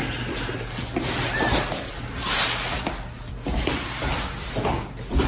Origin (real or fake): real